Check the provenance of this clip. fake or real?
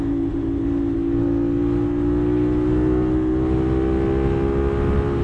real